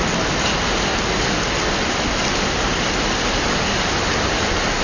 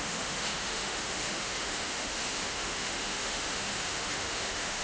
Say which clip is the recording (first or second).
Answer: first